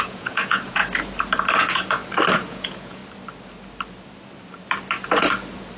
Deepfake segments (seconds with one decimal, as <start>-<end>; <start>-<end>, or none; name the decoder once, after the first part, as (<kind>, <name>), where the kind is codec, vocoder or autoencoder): 0.0-0.8 (vocoder, Vocos); 1.6-2.0; 2.5-3.0